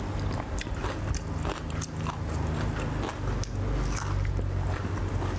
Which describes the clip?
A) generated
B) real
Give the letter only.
B